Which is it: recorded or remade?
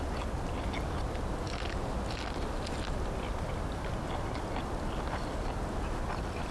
recorded